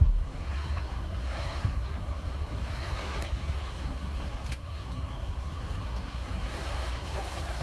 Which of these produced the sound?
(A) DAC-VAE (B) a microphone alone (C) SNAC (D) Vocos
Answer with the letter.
C